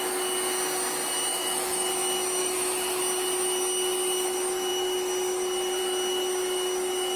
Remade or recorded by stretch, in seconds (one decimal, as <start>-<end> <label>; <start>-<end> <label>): 0.0-1.3 recorded; 1.3-1.9 remade; 1.9-2.4 recorded; 2.4-3.0 remade; 3.0-7.2 recorded